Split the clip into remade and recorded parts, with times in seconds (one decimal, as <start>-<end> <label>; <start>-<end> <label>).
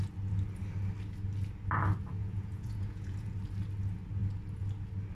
0.0-2.2 recorded; 2.2-3.3 remade; 3.3-5.1 recorded